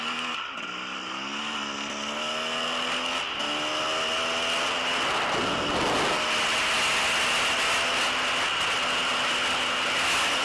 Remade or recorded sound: recorded